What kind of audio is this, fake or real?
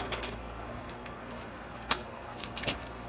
fake